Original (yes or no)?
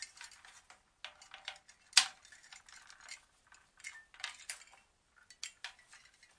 yes